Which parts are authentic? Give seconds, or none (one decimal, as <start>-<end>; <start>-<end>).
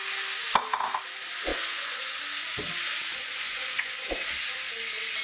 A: 0.0-1.5; 2.2-3.1; 4.1-5.2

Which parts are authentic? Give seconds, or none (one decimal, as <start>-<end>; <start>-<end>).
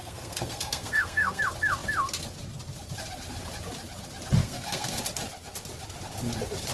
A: 1.4-4.4; 5.0-6.7